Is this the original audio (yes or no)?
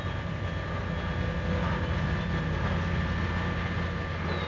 yes